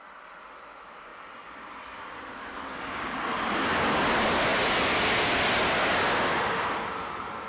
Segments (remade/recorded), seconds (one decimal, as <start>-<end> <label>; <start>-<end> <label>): 0.0-2.7 recorded; 2.7-3.2 remade; 3.2-7.5 recorded